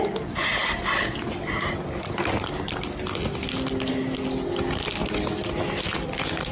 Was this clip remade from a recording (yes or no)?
no